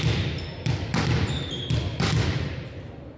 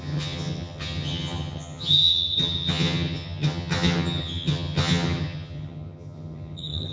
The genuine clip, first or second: first